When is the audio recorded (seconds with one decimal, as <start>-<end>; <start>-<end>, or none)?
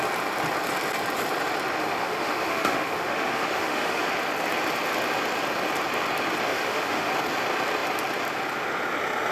0.0-1.8; 4.0-6.5; 7.1-9.3